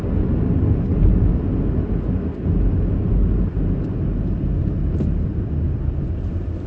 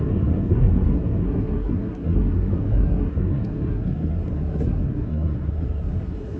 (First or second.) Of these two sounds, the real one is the first